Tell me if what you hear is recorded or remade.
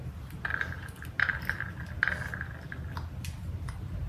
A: recorded